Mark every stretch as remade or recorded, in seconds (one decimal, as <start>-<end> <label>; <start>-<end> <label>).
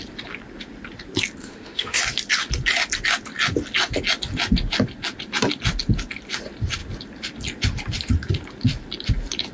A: 0.0-1.4 recorded; 1.4-2.0 remade; 2.0-9.5 recorded